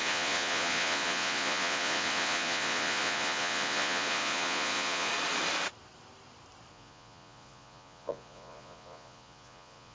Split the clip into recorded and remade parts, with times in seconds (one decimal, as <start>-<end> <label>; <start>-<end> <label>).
0.0-5.1 remade; 5.1-6.7 recorded; 6.7-9.9 remade